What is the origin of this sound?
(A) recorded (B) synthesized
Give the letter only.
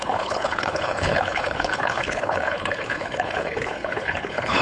B